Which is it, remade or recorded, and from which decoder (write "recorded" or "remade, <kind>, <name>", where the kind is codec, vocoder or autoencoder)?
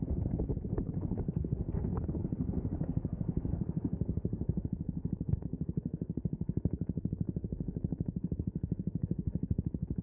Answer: remade, codec, SNAC